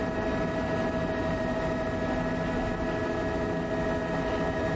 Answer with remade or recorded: recorded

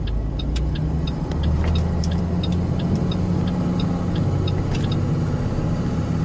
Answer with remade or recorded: recorded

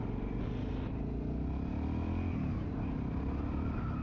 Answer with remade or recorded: recorded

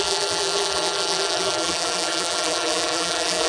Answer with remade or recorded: remade